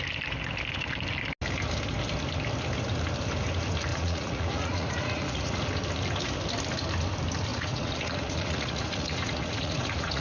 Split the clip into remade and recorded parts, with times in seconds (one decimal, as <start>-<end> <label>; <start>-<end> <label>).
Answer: 0.0-3.9 recorded; 3.9-5.6 remade; 5.6-7.5 recorded; 7.5-10.2 remade